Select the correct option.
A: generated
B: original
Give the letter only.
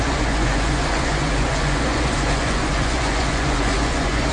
A